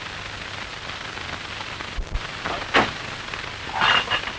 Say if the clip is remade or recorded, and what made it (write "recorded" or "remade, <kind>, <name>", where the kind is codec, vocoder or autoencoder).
recorded